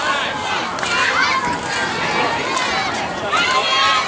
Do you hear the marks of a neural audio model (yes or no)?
no